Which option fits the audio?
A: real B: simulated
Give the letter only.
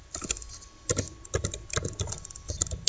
A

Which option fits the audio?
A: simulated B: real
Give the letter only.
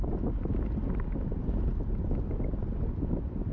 B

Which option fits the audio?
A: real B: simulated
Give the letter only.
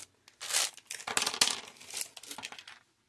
A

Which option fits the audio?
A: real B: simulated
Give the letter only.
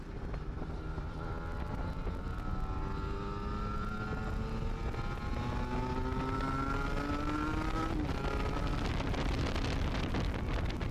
A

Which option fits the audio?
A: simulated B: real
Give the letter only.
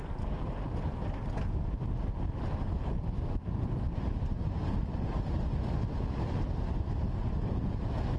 B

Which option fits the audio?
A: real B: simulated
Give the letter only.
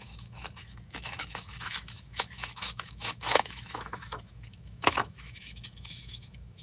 B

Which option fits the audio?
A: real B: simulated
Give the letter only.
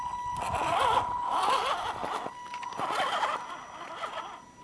A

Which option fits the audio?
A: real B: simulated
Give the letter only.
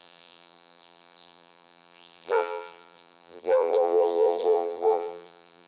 B